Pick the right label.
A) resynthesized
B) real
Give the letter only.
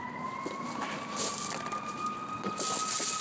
B